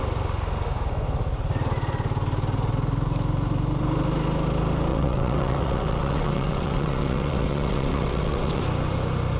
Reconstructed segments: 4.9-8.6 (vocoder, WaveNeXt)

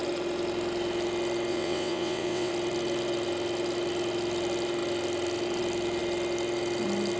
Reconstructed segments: 1.5-2.5 (vocoder, WaveNeXt)

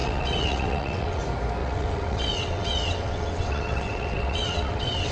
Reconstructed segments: 0.0-1.2 (vocoder, WaveNeXt); 1.6-5.1

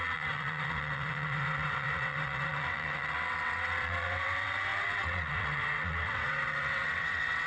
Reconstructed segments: 0.0-7.5 (vocoder, WaveNeXt)